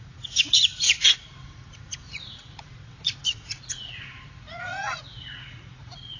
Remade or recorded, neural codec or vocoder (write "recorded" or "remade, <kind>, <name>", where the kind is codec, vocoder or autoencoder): remade, vocoder, Vocos